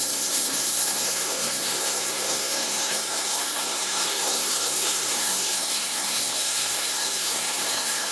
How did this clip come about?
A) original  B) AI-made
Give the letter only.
B